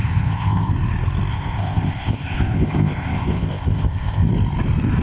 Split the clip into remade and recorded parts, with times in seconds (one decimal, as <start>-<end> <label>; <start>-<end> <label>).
0.0-0.7 remade; 0.7-1.3 recorded; 1.3-4.3 remade; 4.3-5.0 recorded